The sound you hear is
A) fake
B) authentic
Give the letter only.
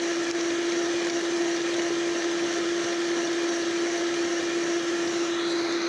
B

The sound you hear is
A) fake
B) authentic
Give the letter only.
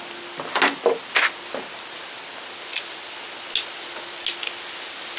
B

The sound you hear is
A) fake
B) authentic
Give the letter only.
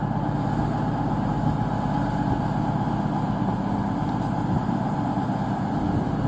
B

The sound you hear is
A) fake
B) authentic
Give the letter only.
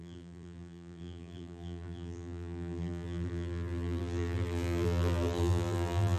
A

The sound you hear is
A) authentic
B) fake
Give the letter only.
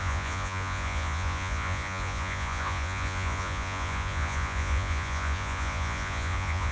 B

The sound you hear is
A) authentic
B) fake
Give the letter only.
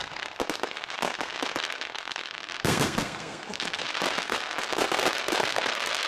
B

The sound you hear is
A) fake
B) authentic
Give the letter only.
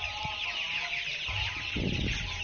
B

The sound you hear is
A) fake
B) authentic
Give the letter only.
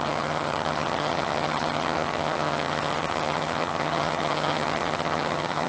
A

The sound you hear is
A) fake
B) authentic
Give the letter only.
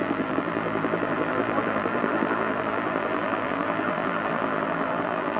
A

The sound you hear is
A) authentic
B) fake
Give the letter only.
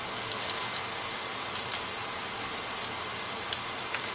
A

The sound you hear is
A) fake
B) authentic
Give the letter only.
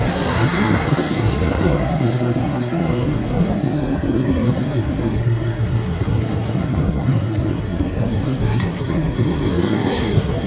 A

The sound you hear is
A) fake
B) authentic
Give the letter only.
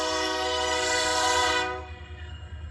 A